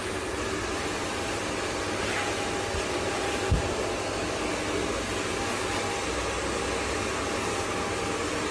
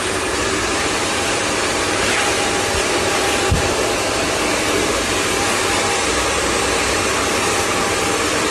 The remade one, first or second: second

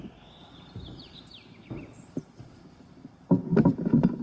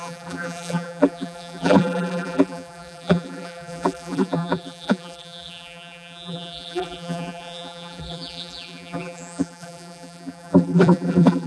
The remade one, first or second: second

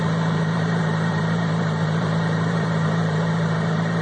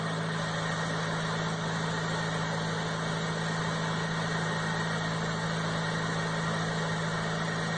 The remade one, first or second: first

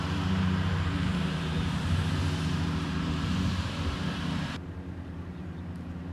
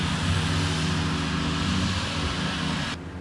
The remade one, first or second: first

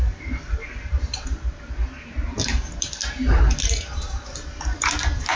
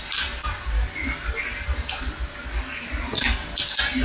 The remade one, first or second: first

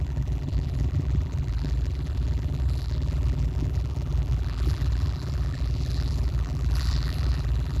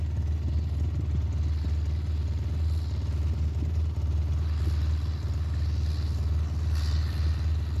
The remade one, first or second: first